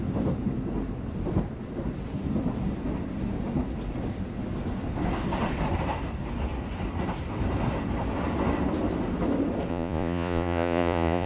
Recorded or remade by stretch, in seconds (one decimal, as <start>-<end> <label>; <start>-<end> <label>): 0.0-9.7 recorded; 9.7-11.3 remade